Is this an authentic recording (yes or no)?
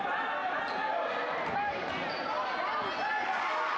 yes